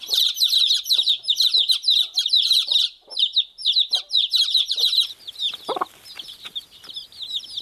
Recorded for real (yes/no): yes